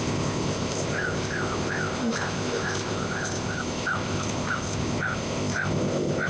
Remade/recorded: remade